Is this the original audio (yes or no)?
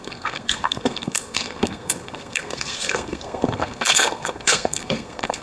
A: no